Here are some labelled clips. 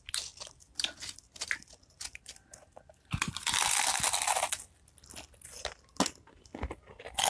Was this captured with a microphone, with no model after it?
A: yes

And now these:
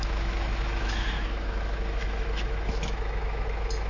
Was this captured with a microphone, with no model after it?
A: no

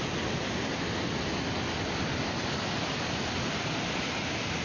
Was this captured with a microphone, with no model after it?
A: yes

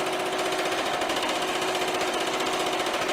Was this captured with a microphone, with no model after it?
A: yes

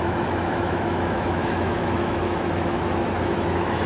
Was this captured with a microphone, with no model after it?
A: no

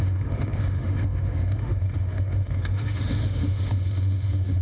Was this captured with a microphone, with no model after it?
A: no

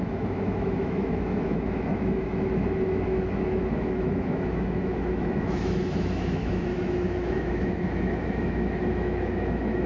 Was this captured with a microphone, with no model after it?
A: no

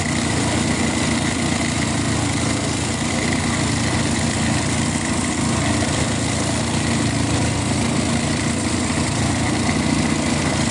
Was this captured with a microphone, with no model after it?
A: yes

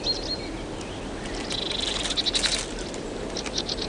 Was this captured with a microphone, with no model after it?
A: yes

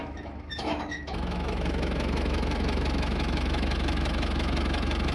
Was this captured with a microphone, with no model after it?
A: no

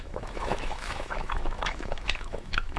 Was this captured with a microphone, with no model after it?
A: no